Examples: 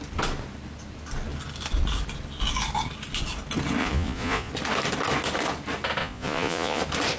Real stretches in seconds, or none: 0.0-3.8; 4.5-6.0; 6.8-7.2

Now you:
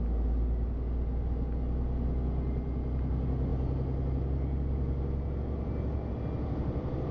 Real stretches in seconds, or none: 0.0-7.1

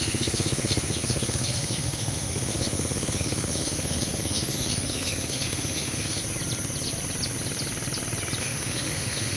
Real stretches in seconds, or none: 6.2-8.4

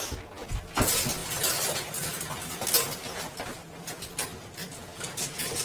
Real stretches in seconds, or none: 0.0-5.6

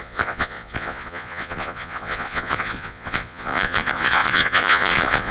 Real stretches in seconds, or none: none

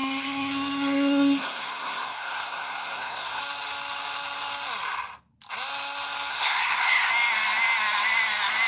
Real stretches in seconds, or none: 3.4-6.3; 7.1-8.7